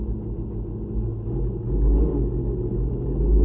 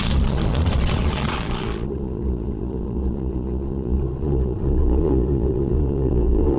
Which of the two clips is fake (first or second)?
second